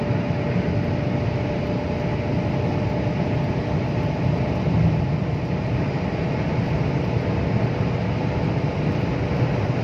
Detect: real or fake real